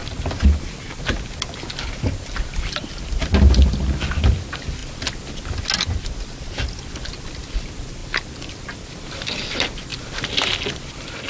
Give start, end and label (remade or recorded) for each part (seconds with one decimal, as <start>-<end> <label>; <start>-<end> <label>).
0.0-11.3 recorded